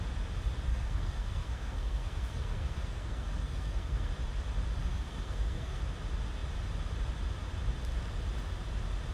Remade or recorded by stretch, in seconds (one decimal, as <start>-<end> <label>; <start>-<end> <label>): 0.0-0.7 recorded; 0.7-4.1 remade; 4.1-4.8 recorded; 4.8-5.8 remade; 5.8-9.1 recorded